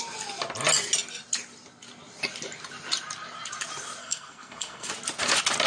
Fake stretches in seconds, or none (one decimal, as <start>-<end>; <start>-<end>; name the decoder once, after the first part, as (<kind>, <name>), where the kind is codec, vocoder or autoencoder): 4.0-4.9 (codec, SNAC)